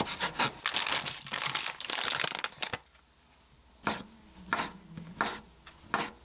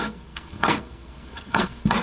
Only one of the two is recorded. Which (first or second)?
first